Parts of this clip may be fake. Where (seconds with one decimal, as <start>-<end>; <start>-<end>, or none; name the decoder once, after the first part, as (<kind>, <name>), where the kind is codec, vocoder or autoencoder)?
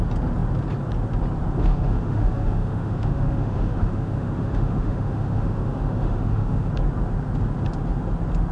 1.6-6.7 (autoencoder, DAC-VAE)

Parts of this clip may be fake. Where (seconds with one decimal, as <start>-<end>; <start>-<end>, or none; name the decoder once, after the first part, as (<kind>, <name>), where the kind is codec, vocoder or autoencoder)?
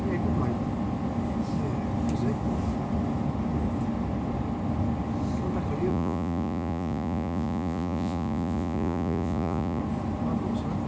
5.9-9.8 (vocoder, Vocos)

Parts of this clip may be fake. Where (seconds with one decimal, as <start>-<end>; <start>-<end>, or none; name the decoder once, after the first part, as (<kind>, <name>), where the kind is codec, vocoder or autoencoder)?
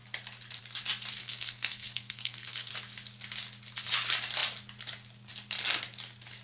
1.2-2.7 (codec, SNAC)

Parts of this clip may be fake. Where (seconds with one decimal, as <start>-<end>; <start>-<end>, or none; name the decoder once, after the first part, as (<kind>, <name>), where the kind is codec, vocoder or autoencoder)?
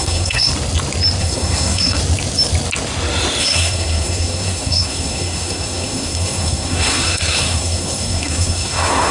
0.0-0.5 (codec, SNAC); 1.2-2.0; 3.4-9.1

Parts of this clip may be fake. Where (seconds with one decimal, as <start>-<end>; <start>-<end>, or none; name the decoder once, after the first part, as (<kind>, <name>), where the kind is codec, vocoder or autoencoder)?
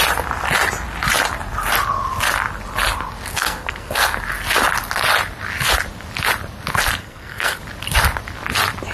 3.3-4.2 (codec, SNAC); 7.0-7.6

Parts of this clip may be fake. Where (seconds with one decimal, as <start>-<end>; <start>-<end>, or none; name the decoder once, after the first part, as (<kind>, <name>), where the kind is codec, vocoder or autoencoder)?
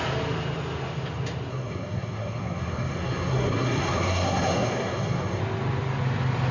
1.5-5.4 (codec, SNAC)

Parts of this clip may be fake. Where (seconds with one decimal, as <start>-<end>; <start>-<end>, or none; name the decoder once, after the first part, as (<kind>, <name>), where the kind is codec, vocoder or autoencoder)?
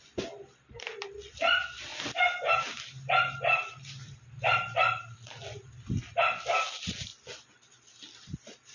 0.0-7.1 (vocoder, BigVGAN v2)